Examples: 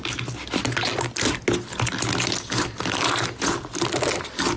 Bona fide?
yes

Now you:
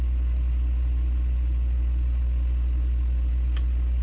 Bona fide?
yes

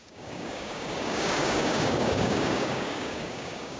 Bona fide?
no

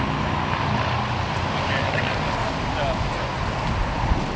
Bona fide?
yes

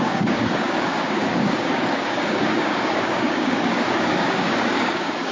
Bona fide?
no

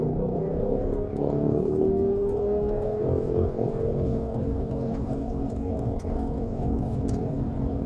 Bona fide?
no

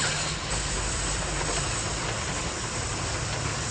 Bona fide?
yes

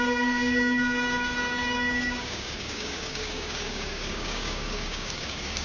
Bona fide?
no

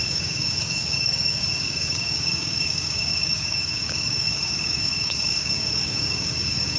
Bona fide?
no